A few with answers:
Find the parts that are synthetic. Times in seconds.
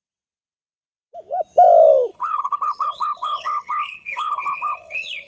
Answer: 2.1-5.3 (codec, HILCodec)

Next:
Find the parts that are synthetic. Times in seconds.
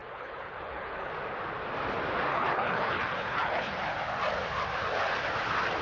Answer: 0.0-1.1 (codec, HILCodec); 2.3-3.8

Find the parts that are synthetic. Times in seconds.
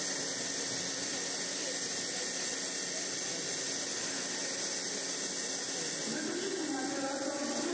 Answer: none